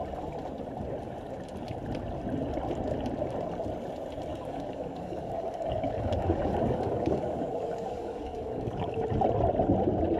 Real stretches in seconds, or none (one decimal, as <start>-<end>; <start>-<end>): 0.0-4.3; 9.0-10.2